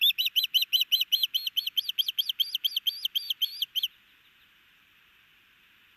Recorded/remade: recorded